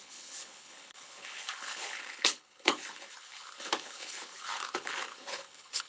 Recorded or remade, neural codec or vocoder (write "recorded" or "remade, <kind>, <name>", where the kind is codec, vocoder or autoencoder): remade, codec, HILCodec